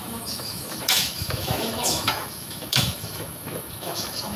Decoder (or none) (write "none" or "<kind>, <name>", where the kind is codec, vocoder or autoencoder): autoencoder, DAC-VAE